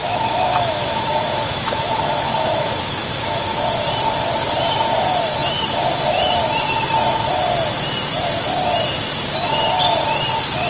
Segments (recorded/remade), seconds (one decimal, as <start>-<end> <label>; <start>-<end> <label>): 0.0-3.7 remade; 3.7-10.7 recorded